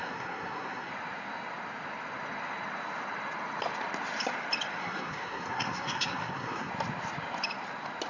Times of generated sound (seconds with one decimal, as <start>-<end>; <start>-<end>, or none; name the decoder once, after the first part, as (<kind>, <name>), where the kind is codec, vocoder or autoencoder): 0.0-0.9 (codec, SNAC); 4.8-6.7